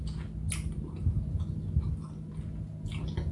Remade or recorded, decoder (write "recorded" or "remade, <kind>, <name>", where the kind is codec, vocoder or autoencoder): recorded